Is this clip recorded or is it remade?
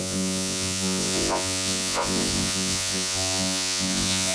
remade